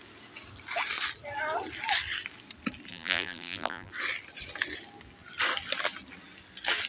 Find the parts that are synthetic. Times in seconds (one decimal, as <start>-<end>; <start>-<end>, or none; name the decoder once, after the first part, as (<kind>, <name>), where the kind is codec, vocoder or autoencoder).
2.9-3.9 (vocoder, BigVGAN v2)